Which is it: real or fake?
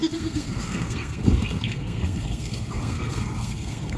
fake